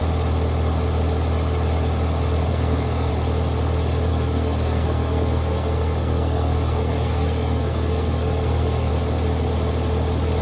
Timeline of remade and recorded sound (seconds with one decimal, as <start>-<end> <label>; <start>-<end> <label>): 0.0-2.5 recorded; 2.5-3.1 remade; 3.1-4.1 recorded; 4.1-8.9 remade; 8.9-10.4 recorded